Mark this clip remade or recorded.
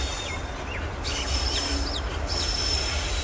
recorded